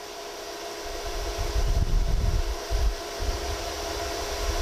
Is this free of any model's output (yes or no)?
yes